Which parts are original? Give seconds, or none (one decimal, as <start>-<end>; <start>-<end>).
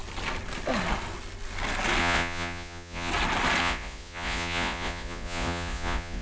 0.0-2.0; 3.1-3.6